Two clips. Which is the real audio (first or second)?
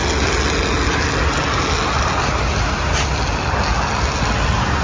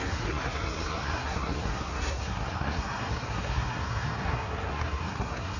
first